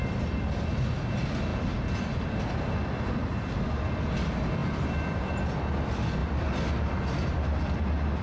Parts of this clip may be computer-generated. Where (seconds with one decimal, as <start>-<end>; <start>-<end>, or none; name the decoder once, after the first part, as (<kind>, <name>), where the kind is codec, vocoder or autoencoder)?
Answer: none